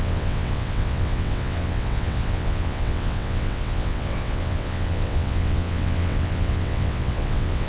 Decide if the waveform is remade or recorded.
remade